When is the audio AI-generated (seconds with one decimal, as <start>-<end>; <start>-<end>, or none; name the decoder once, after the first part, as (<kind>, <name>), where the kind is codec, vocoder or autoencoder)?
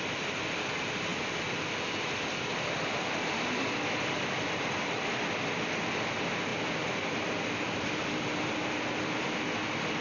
none